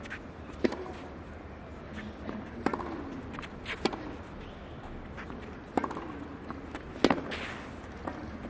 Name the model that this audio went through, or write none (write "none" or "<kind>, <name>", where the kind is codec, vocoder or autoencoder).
none